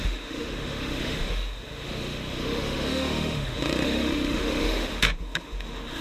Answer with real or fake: fake